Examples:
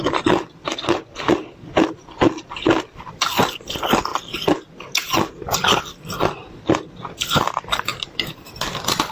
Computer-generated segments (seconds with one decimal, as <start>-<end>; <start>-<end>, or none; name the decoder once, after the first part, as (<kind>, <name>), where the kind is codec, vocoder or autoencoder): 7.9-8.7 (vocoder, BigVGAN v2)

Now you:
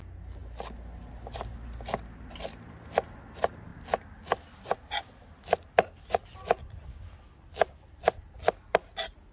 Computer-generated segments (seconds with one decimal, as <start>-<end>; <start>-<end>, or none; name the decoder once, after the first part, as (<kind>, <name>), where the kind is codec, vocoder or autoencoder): none

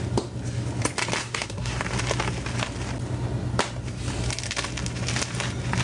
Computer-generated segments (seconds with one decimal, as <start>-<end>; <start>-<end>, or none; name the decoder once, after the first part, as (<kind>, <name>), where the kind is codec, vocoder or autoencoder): 1.2-1.8 (codec, SNAC)

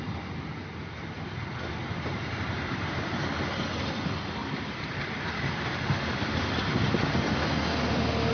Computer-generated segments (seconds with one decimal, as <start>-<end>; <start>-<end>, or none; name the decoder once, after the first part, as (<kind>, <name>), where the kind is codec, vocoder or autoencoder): 1.8-3.3 (vocoder, BigVGAN v2); 4.4-5.0

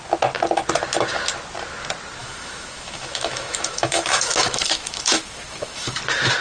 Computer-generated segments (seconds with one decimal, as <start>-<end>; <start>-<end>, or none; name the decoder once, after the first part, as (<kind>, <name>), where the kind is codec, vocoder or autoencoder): 2.2-6.0 (autoencoder, DAC-VAE)

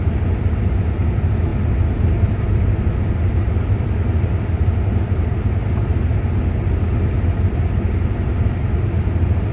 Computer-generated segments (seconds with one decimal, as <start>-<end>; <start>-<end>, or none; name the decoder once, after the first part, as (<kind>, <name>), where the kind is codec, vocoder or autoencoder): none